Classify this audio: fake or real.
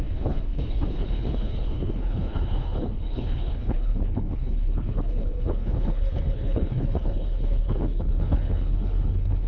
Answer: fake